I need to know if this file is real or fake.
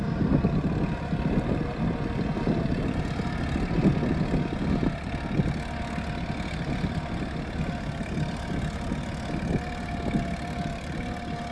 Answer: real